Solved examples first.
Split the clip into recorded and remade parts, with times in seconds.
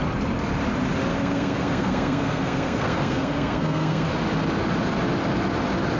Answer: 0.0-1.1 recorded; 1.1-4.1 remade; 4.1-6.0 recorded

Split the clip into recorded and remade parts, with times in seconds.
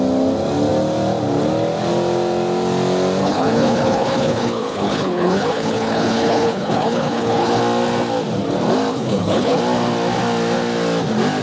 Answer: 0.0-3.2 recorded; 3.2-7.6 remade; 7.6-8.9 recorded; 8.9-9.6 remade; 9.6-11.4 recorded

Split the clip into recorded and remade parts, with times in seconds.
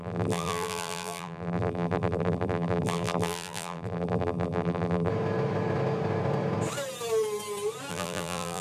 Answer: 0.0-5.1 remade; 5.1-7.9 recorded; 7.9-8.6 remade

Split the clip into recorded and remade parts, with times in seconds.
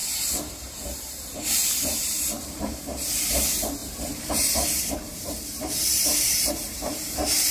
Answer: 0.0-7.5 remade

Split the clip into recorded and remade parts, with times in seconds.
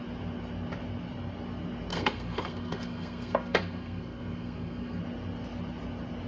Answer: 0.0-1.9 recorded; 1.9-5.0 remade; 5.0-6.3 recorded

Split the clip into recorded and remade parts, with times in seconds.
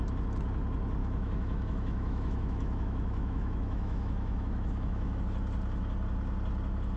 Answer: 0.0-1.0 recorded; 1.0-5.2 remade; 5.2-7.0 recorded